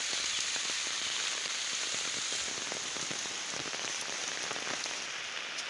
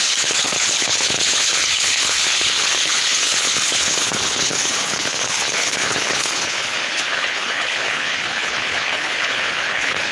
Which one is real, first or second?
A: first